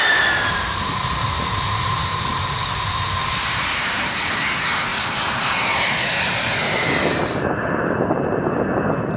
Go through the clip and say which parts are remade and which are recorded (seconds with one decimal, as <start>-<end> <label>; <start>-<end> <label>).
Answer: 0.0-9.2 recorded